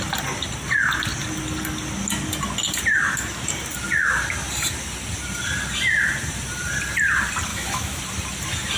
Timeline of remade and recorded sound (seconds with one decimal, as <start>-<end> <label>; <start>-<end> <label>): 0.0-7.5 recorded; 7.5-8.0 remade; 8.0-8.8 recorded